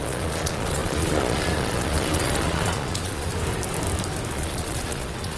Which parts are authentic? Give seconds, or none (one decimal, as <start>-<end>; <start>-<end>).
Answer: 3.3-4.3